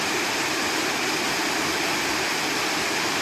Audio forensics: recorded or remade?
recorded